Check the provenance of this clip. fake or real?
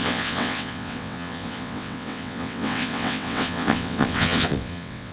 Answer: fake